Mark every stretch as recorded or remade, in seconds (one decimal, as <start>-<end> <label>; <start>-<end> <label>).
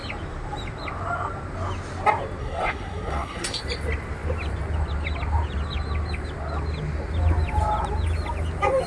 0.0-2.4 recorded; 2.4-3.6 remade; 3.6-8.9 recorded